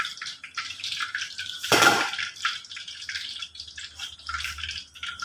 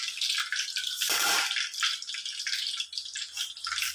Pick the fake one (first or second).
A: first